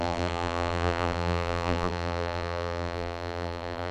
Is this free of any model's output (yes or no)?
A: no